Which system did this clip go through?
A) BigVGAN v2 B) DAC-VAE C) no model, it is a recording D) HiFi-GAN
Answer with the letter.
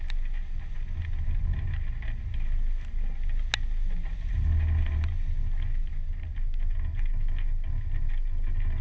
C